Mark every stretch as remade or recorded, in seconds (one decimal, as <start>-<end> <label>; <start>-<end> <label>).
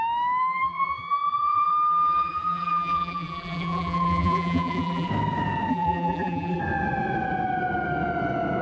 0.0-0.4 recorded; 0.4-5.1 remade; 5.1-5.7 recorded; 5.7-6.6 remade; 6.6-8.6 recorded